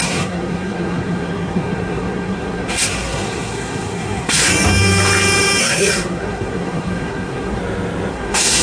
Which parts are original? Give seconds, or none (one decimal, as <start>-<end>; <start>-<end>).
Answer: 4.5-5.6; 7.6-8.1